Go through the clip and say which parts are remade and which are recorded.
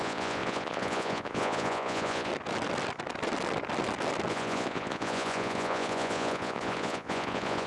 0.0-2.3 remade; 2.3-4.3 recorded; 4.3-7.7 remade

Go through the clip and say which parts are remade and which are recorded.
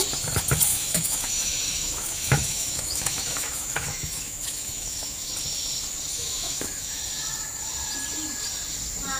0.0-0.7 recorded; 0.7-5.3 remade; 5.3-6.1 recorded; 6.1-7.0 remade; 7.0-9.2 recorded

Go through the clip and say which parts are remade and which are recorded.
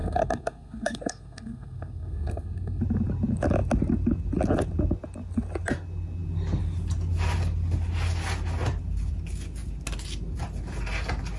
0.0-2.8 remade; 2.8-11.4 recorded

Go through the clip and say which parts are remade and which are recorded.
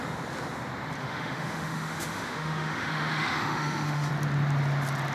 0.0-1.0 recorded; 1.0-4.1 remade; 4.1-5.1 recorded